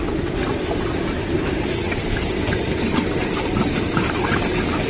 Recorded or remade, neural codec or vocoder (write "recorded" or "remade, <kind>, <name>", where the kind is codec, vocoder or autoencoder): remade, vocoder, BigVGAN v2